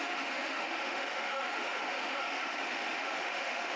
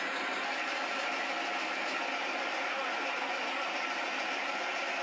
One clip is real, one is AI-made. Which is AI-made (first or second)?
first